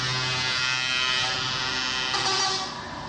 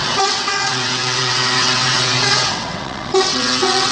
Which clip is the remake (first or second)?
second